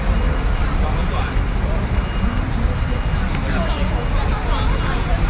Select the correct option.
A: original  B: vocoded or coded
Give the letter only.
A